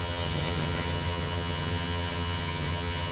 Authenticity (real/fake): fake